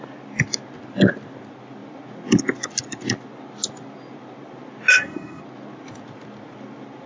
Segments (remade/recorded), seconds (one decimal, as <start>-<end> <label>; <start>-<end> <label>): 0.0-4.9 recorded; 4.9-5.4 remade; 5.4-7.1 recorded